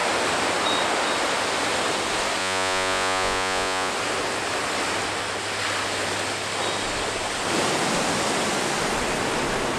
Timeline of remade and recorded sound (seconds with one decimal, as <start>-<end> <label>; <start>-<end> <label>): 0.0-2.4 recorded; 2.4-3.9 remade; 3.9-9.8 recorded